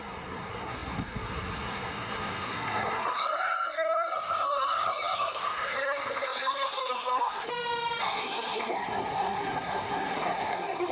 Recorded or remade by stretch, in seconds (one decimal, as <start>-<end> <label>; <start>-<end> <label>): 0.0-7.5 remade; 7.5-8.0 recorded; 8.0-10.9 remade